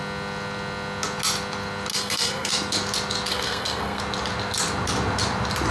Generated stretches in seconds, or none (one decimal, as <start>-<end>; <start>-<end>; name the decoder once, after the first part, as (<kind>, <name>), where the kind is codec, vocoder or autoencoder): 1.9-2.5 (codec, SNAC); 3.3-4.0